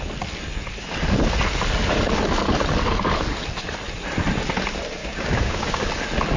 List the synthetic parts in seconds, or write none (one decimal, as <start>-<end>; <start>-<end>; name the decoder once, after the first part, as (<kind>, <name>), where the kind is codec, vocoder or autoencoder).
5.0-5.8 (codec, DAC)